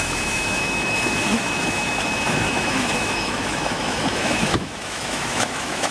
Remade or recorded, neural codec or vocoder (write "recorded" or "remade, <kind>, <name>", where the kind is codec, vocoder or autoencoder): remade, autoencoder, DAC-VAE